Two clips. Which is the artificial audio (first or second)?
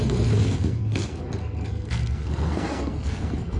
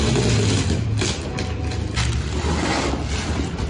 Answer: first